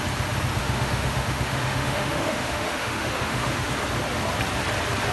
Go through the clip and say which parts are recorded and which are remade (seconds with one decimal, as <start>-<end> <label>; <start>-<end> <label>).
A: 0.0-0.6 recorded; 0.6-3.7 remade; 3.7-5.1 recorded

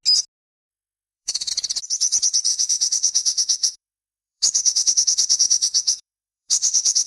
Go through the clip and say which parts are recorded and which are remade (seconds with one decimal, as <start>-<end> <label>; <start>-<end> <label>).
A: 0.0-0.7 recorded; 0.7-1.5 remade; 1.5-2.5 recorded; 2.5-7.1 remade

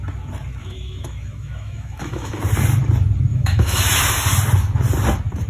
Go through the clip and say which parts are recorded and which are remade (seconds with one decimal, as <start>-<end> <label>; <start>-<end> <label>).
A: 0.0-0.6 recorded; 0.6-2.4 remade; 2.4-3.3 recorded; 3.3-4.1 remade; 4.1-5.5 recorded